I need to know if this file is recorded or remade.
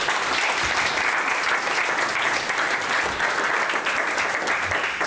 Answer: recorded